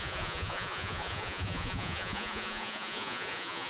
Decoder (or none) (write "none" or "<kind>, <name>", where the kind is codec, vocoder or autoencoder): vocoder, Vocos